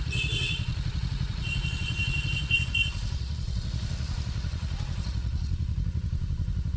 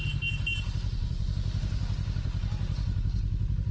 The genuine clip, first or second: second